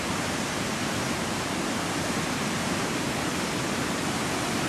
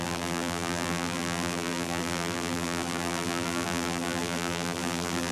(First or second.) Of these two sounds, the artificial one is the second